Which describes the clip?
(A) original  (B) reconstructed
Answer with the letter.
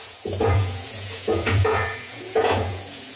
B